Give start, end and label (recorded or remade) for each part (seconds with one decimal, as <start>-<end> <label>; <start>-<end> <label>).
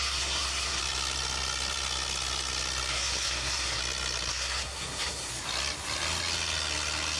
0.0-0.8 remade; 0.8-2.9 recorded; 2.9-3.8 remade; 3.8-4.3 recorded; 4.3-5.3 remade; 5.3-7.2 recorded